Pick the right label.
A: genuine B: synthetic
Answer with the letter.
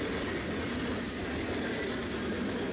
A